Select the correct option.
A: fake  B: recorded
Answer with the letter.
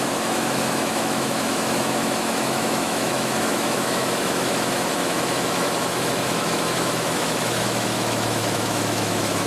A